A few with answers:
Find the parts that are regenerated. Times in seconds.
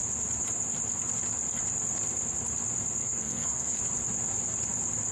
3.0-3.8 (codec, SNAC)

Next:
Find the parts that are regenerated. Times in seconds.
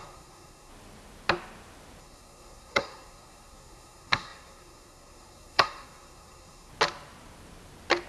0.0-0.7 (codec, SNAC); 2.0-6.7